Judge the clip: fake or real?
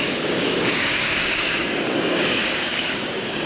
fake